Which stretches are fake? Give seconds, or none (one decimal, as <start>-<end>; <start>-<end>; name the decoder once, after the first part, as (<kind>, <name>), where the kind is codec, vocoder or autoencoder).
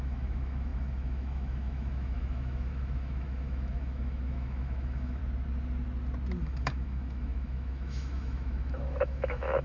0.0-5.2 (autoencoder, DAC-VAE); 6.4-9.6